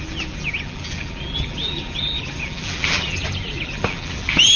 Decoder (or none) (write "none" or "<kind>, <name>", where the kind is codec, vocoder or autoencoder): vocoder, BigVGAN v2